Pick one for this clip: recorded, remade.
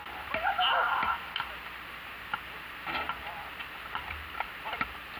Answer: recorded